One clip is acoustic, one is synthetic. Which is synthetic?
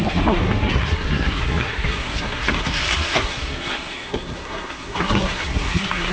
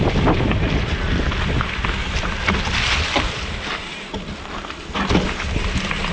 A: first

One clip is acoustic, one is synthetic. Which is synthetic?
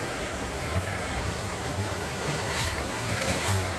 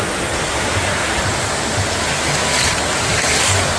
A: first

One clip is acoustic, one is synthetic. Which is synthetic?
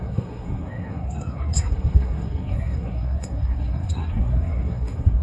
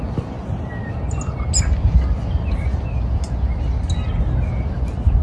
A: first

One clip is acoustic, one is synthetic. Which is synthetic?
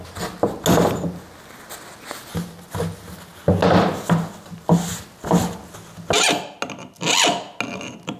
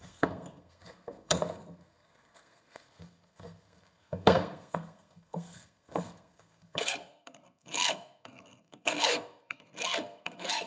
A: second